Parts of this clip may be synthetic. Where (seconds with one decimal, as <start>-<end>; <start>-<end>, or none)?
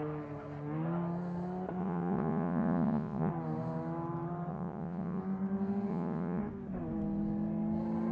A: 1.8-3.3; 4.5-5.2; 5.9-6.4